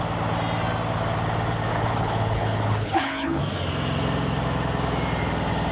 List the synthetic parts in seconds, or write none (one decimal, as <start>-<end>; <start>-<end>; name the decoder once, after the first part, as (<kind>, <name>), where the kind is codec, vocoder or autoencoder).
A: 1.7-3.4 (codec, HILCodec)